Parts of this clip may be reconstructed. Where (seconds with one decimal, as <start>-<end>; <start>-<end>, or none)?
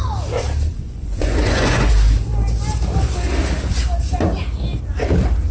0.7-1.9